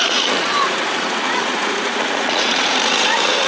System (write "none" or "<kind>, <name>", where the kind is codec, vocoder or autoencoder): vocoder, Vocos